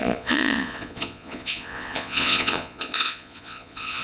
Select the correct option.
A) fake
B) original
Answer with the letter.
A